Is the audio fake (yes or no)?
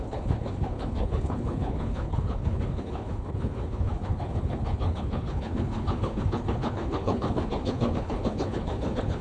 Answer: yes